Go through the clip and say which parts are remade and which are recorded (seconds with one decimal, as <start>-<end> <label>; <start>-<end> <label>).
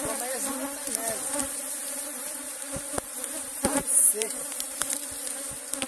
0.0-1.4 recorded; 1.4-4.9 remade; 4.9-5.9 recorded